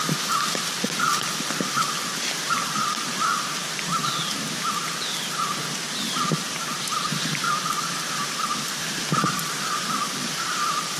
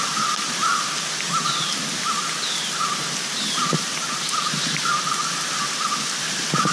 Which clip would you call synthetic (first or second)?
first